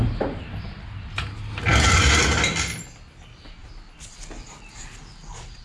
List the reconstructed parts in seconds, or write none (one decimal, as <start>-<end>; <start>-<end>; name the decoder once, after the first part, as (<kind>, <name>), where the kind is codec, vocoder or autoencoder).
none